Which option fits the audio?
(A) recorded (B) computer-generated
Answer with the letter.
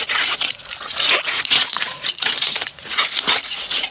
B